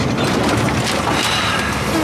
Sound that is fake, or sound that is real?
real